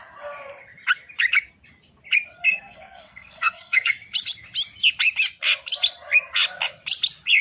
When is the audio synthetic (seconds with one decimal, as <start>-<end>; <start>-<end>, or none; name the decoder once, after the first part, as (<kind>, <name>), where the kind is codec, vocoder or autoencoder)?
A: 2.4-3.9 (codec, SNAC)